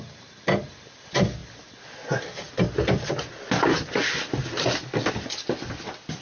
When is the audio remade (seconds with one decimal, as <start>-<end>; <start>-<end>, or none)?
none